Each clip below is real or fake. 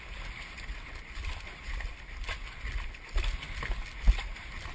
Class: real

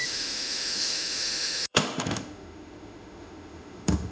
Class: fake